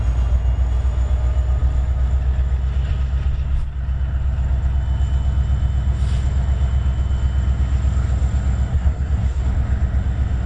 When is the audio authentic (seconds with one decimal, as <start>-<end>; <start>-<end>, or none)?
0.0-8.7; 9.4-10.5